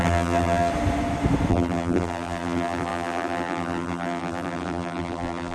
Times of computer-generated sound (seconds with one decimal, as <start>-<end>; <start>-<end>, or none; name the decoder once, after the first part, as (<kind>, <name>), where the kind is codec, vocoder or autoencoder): 0.0-0.7 (vocoder, BigVGAN v2); 1.5-5.5